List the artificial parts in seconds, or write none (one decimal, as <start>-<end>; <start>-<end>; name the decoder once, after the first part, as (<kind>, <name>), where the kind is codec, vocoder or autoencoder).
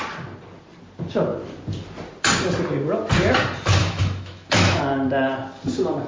3.8-4.8 (autoencoder, DAC-VAE)